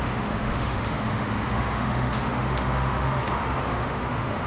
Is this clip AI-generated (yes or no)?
yes